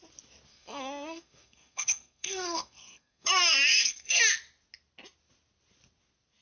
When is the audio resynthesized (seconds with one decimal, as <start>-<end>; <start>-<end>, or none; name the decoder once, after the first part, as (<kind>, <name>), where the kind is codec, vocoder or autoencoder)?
0.5-4.2 (codec, SNAC)